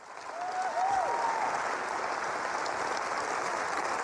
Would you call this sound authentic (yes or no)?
yes